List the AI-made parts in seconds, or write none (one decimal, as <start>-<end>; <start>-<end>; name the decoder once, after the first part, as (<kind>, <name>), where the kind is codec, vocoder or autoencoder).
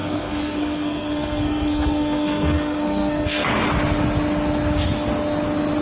0.0-3.5 (codec, SNAC)